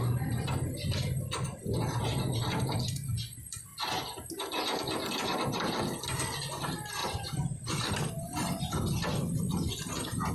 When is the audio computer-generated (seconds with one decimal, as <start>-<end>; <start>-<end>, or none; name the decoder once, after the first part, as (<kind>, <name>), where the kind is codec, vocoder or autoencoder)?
7.0-10.3 (vocoder, BigVGAN v2)